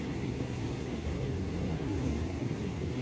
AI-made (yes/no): yes